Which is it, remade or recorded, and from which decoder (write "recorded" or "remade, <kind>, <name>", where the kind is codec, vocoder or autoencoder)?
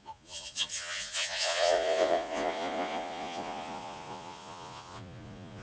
remade, vocoder, Vocos